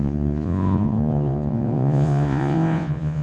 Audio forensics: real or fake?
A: fake